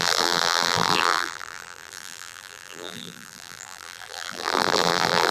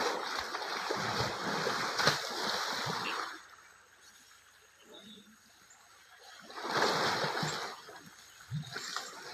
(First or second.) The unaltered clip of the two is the second